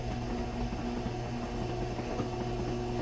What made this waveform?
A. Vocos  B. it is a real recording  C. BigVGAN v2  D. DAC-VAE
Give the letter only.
B